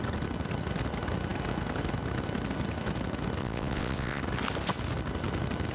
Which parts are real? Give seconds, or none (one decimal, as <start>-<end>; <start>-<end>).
0.0-3.4; 4.2-5.7